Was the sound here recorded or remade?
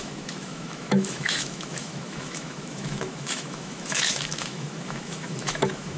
remade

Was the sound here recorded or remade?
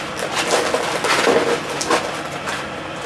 recorded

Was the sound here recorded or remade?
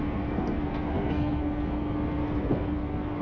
remade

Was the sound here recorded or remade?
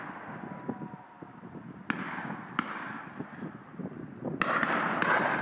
recorded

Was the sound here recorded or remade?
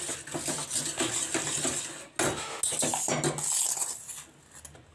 recorded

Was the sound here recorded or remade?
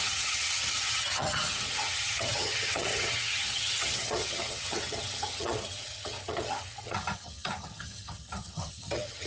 remade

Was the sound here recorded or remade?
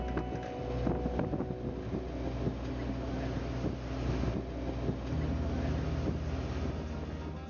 recorded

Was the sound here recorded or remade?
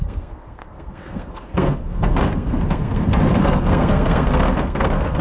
remade